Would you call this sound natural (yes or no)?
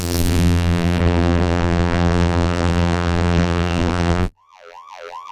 no